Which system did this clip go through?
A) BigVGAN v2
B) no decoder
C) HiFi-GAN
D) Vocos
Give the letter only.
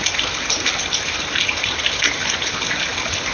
B